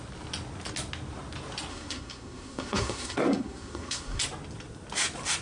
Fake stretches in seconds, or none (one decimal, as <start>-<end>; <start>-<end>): 1.7-4.2